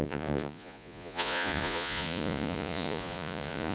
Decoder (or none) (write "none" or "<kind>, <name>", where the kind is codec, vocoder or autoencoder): vocoder, Vocos